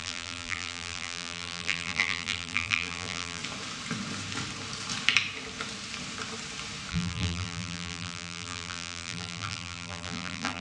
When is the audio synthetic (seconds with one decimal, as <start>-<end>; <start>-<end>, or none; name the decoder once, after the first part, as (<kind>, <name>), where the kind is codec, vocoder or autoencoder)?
0.0-3.4 (vocoder, BigVGAN v2); 6.9-10.6